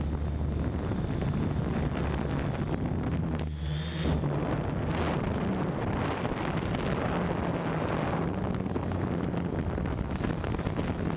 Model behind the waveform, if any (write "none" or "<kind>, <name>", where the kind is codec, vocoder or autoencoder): none